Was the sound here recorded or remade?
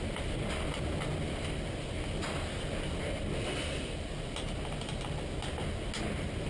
recorded